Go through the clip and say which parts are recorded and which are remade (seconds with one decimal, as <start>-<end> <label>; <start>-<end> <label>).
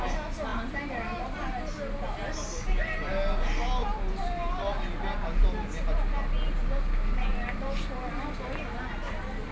0.0-3.8 recorded; 3.8-4.7 remade; 4.7-7.3 recorded; 7.3-8.1 remade; 8.1-9.5 recorded